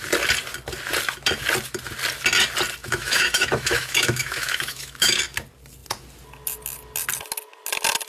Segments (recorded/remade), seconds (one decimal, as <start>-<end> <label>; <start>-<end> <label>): 0.0-2.8 recorded; 2.8-5.2 remade; 5.2-8.1 recorded